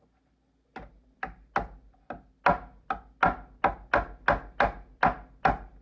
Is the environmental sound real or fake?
real